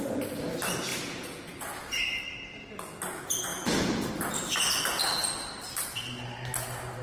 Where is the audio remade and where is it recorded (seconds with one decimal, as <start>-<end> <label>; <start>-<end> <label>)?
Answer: 0.0-0.9 recorded; 0.9-2.0 remade; 2.0-3.5 recorded; 3.5-4.1 remade; 4.1-7.0 recorded